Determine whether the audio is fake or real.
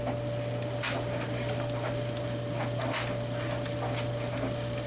real